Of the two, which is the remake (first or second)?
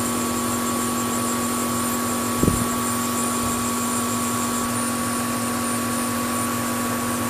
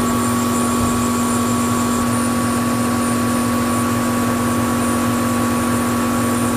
first